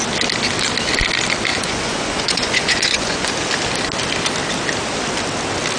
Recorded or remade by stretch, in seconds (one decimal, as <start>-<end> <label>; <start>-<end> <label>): 0.0-1.5 recorded; 1.5-3.3 remade; 3.3-5.8 recorded